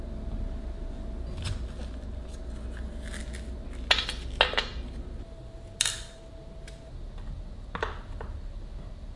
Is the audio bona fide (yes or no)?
yes